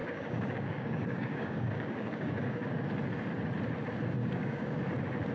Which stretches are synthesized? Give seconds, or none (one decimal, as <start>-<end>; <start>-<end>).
0.0-2.7; 4.2-4.7